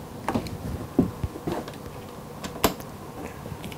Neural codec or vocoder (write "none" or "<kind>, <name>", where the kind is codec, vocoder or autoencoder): none